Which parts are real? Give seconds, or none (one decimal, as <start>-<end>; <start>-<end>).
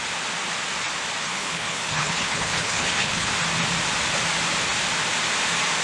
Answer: 0.0-1.2; 3.3-5.8